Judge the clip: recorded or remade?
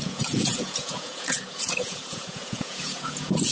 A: remade